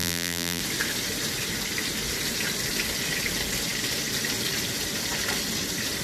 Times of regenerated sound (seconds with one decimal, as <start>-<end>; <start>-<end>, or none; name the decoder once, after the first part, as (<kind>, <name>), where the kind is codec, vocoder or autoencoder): 0.0-0.6 (vocoder, BigVGAN v2)

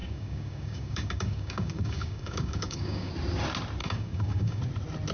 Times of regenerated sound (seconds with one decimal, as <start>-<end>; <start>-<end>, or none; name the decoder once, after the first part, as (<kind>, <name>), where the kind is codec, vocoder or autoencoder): 0.0-3.1 (codec, DAC); 3.8-4.6

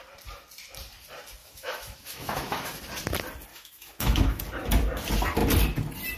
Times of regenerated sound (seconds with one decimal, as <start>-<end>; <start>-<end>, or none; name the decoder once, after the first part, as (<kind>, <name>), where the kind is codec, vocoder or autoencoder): 1.4-2.8 (autoencoder, DAC-VAE); 3.5-4.4

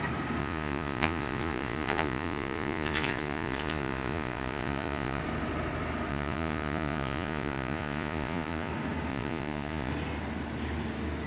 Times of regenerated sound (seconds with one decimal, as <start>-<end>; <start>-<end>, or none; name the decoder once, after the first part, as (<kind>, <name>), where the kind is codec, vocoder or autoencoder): 0.4-5.2 (vocoder, Vocos); 6.1-8.7; 9.1-9.9

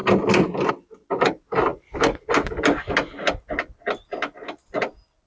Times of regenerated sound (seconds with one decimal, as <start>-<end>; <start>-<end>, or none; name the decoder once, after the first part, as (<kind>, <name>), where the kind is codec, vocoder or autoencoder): none

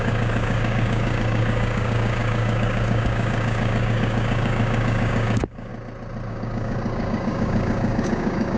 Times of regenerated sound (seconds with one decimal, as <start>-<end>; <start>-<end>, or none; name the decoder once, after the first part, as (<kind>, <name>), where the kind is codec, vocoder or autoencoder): 0.0-5.7 (codec, DAC); 6.3-8.6